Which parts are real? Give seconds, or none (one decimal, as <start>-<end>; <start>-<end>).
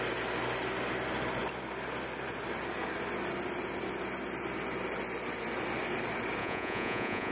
0.0-6.4